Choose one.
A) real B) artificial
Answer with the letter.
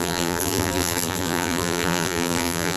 B